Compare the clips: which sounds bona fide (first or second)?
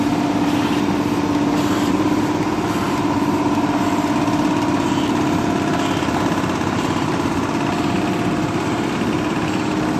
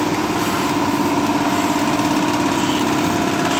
second